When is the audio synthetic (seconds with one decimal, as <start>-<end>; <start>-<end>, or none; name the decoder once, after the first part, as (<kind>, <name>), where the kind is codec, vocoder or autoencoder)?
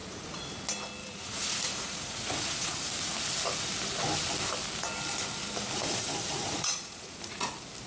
0.0-0.6 (vocoder, Vocos); 1.0-2.9; 5.8-7.5